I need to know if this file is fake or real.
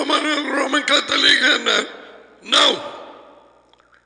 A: real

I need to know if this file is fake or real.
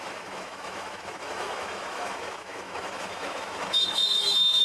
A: fake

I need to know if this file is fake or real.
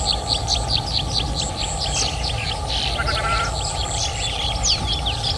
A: real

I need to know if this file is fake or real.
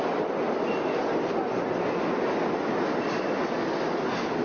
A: real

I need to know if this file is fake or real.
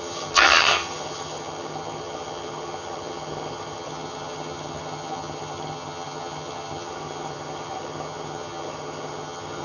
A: fake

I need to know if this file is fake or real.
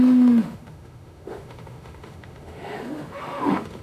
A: fake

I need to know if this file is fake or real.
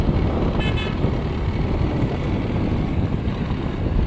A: real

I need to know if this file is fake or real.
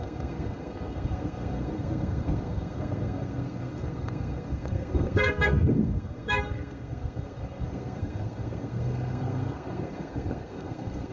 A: fake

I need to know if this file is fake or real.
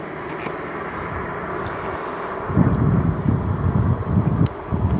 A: real